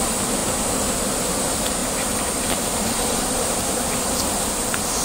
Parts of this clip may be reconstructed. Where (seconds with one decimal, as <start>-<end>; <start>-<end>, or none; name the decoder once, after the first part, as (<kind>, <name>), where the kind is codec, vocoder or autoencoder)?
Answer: 1.8-5.0 (vocoder, BigVGAN v2)